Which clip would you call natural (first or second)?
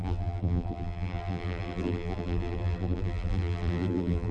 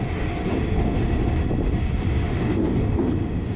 second